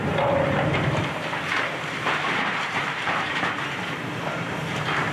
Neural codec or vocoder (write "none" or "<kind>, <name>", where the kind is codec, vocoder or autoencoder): vocoder, BigVGAN v2